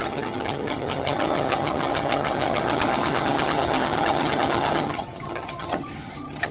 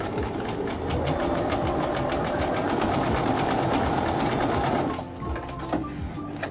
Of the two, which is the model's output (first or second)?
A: first